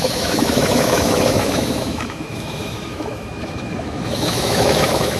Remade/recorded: remade